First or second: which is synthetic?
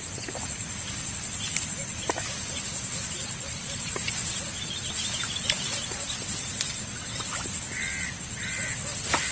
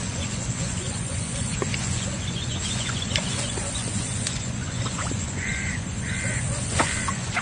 second